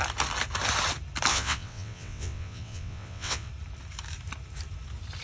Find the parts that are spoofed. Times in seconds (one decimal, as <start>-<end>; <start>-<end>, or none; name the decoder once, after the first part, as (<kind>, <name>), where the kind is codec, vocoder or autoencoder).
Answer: 1.3-3.5 (vocoder, WaveNeXt)